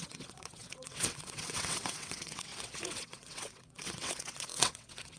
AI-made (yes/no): yes